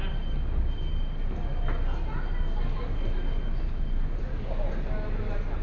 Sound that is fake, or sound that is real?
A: real